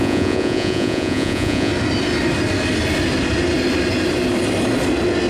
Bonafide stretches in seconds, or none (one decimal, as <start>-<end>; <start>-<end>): 1.7-5.3